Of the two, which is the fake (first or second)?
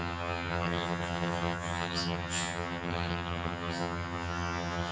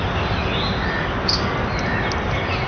first